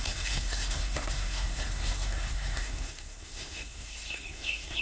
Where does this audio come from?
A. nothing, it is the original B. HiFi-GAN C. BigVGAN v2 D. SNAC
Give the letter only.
D